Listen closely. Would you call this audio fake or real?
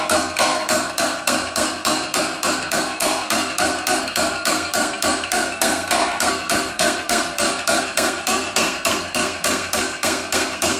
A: fake